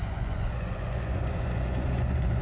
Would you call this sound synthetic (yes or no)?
yes